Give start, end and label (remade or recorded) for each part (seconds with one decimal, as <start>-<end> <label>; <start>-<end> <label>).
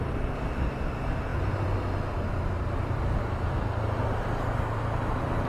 0.0-5.5 recorded